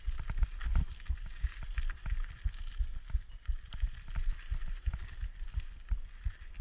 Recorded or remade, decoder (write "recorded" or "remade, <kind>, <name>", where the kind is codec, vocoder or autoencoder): recorded